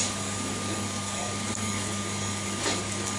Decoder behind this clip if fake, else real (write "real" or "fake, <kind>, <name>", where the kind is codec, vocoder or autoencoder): fake, codec, DAC